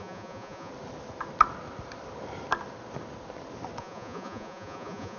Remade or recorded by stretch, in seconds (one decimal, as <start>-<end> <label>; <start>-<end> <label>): 0.0-0.7 remade; 0.7-3.8 recorded; 3.8-5.2 remade